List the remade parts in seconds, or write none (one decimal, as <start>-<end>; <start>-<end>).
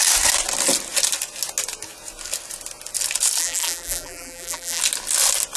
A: 3.4-4.8